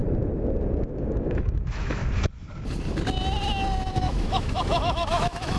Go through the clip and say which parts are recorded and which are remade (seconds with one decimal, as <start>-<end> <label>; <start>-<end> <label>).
0.0-1.1 recorded; 1.1-2.0 remade; 2.0-3.9 recorded; 3.9-5.6 remade